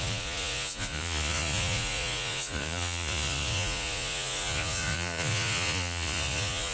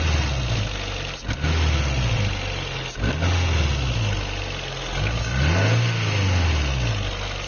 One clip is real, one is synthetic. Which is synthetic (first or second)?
first